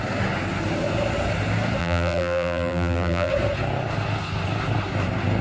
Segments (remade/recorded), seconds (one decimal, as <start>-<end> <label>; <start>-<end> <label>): 0.0-1.8 recorded; 1.8-3.3 remade; 3.3-5.4 recorded